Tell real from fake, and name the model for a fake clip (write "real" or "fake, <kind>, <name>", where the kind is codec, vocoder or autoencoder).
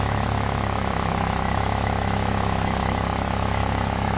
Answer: fake, autoencoder, DAC-VAE